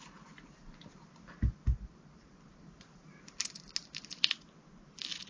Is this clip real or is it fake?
real